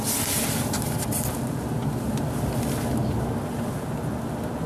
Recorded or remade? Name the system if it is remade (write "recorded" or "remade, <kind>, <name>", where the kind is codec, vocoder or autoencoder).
recorded